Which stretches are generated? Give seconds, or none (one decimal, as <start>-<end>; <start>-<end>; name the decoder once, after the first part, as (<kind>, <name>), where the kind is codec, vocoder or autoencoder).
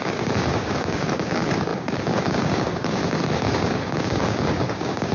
0.0-5.1 (codec, DAC)